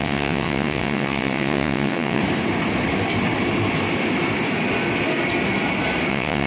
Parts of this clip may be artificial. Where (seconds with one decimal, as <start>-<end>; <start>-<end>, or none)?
0.0-2.2; 6.1-6.5